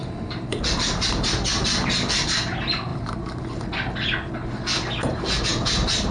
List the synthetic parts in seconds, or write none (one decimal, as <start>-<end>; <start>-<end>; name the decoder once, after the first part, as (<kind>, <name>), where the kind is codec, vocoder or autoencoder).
0.0-0.6 (vocoder, BigVGAN v2); 2.9-4.3